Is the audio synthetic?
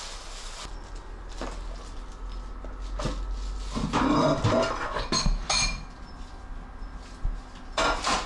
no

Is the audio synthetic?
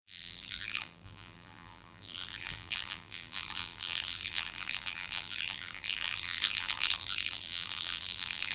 yes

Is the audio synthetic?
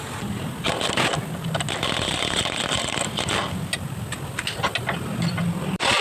yes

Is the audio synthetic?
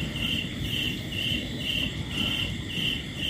yes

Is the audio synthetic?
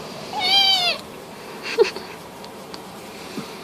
yes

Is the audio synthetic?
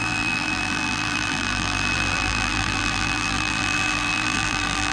yes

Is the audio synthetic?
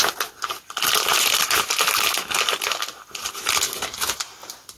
no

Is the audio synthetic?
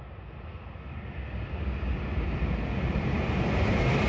no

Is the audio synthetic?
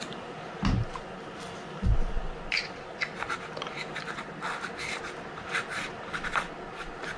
no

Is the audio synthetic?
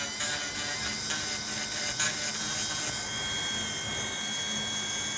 no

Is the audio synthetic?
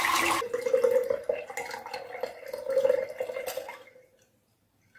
no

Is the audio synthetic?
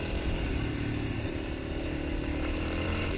yes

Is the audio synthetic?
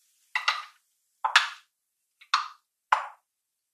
no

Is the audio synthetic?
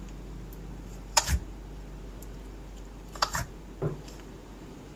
yes